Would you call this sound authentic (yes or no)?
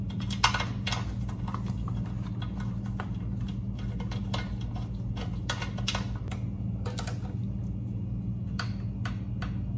yes